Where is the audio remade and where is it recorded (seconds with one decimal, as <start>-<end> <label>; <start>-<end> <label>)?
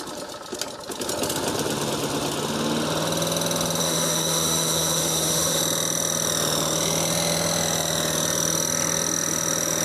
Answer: 0.0-3.8 recorded; 3.8-5.6 remade; 5.6-9.8 recorded